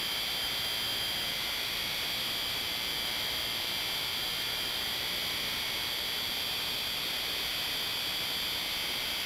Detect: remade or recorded recorded